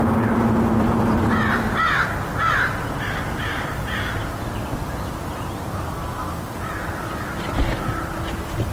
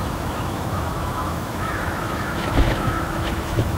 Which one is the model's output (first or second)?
second